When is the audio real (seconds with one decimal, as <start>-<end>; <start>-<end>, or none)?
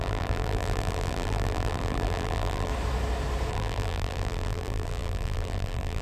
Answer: 2.7-3.5